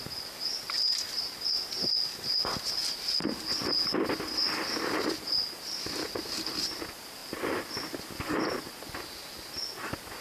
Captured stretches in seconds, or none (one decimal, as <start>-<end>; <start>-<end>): 0.0-10.2